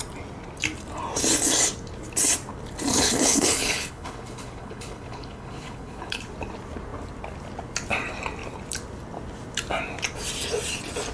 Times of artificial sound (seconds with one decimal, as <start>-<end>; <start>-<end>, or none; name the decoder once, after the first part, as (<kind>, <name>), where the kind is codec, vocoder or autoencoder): 2.9-6.3 (codec, HILCodec)